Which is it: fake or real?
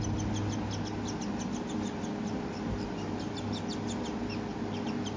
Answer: real